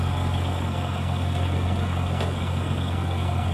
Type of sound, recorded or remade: remade